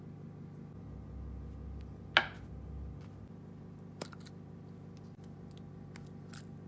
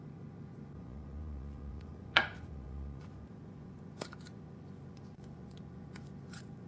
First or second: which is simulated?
second